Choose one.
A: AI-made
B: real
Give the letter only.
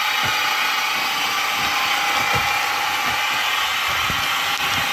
B